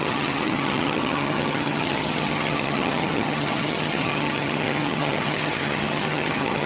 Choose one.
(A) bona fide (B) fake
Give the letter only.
B